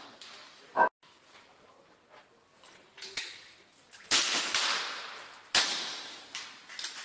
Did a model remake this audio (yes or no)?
no